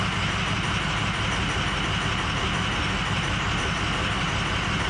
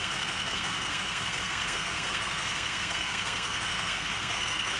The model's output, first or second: second